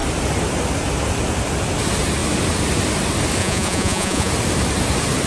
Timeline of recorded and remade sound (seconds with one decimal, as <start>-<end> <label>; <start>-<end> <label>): 0.0-3.4 recorded; 3.4-4.3 remade; 4.3-5.3 recorded